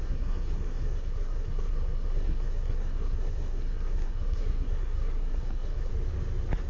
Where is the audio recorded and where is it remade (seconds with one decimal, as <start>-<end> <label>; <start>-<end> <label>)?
0.0-5.9 remade; 5.9-6.7 recorded